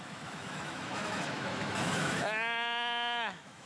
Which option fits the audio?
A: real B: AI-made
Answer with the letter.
B